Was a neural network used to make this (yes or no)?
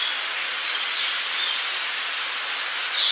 no